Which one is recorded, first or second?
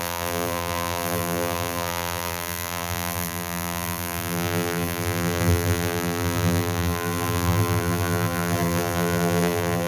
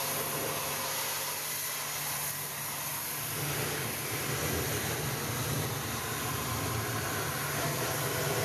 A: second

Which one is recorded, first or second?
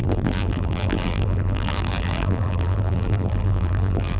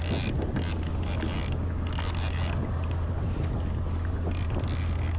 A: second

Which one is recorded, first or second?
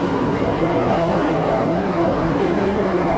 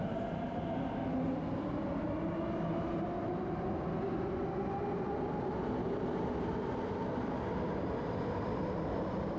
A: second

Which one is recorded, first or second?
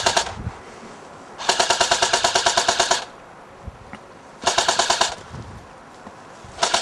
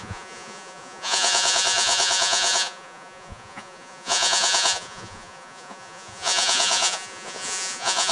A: first